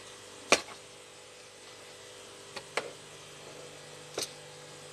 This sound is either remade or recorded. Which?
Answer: recorded